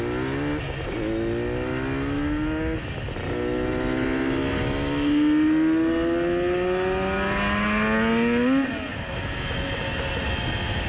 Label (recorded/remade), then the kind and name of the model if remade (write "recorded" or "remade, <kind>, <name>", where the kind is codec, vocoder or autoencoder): recorded